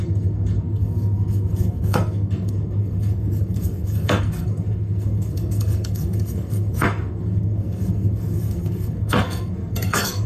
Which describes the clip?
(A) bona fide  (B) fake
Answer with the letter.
B